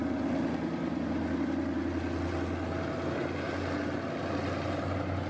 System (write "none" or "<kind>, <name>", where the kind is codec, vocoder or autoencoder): none